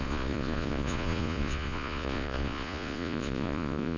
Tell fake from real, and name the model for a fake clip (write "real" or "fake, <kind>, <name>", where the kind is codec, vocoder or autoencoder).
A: fake, vocoder, Vocos